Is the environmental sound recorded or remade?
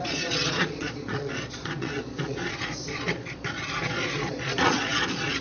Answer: remade